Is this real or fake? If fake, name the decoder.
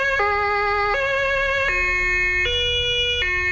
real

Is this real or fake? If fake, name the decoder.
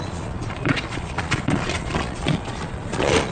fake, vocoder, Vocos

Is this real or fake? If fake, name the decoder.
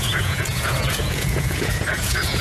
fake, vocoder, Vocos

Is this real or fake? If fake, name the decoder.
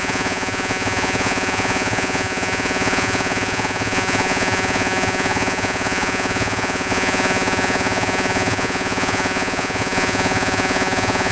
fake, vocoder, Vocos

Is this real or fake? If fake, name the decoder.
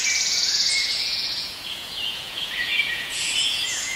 fake, vocoder, Vocos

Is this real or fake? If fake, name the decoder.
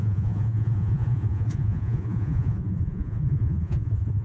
fake, vocoder, Vocos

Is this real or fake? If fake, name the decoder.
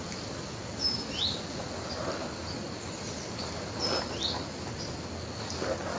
real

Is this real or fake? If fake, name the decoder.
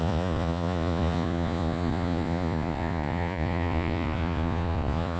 fake, vocoder, Vocos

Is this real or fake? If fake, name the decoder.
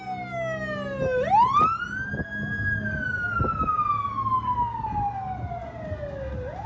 real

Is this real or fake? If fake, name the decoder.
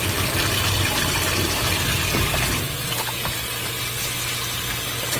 real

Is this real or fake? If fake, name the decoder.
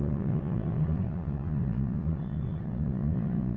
fake, vocoder, Vocos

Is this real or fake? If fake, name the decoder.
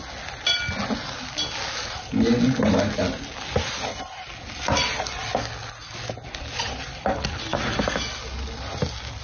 real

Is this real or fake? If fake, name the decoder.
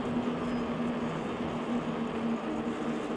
real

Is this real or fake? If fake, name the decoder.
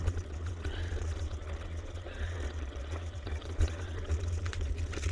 fake, vocoder, Vocos